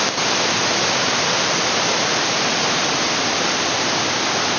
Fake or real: real